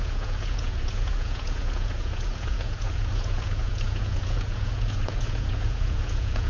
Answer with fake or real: fake